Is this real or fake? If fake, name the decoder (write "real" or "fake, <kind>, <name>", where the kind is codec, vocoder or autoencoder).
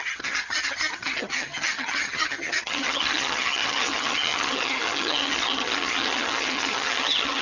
fake, vocoder, HiFi-GAN